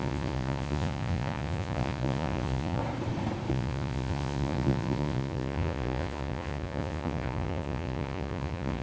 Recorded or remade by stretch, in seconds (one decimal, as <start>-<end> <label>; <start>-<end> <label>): 0.0-2.8 remade; 2.8-3.5 recorded; 3.5-8.8 remade